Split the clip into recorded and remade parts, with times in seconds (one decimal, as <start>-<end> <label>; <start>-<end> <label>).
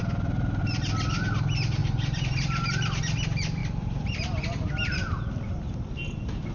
0.0-1.8 recorded; 1.8-3.0 remade; 3.0-3.6 recorded; 3.6-5.9 remade; 5.9-6.5 recorded